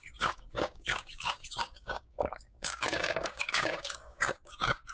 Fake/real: fake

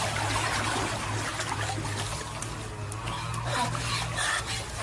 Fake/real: real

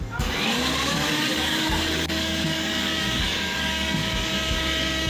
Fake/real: fake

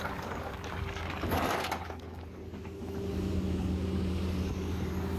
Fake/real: fake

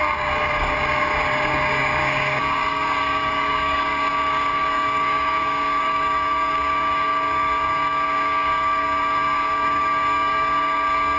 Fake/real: fake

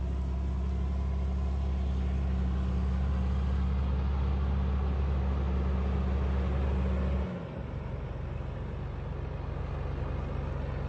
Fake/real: real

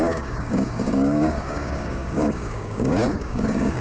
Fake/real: fake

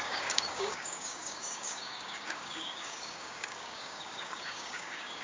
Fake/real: fake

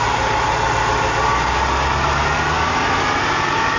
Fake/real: real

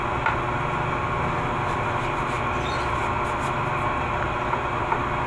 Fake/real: real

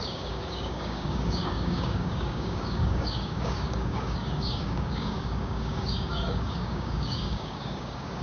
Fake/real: fake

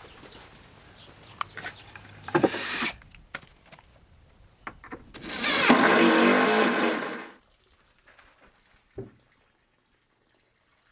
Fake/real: real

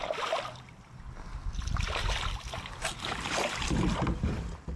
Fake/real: real